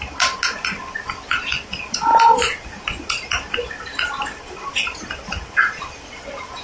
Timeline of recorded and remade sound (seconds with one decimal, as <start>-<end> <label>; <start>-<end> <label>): 0.0-6.6 recorded